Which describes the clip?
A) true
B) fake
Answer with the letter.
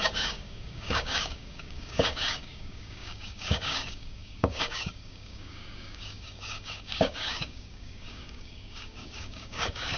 B